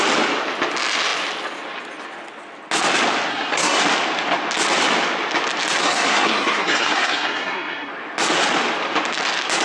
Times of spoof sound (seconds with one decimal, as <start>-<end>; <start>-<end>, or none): 3.3-3.8; 5.8-7.9